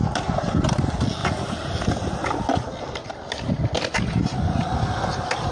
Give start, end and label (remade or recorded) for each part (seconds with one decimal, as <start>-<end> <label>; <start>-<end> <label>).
0.0-5.5 recorded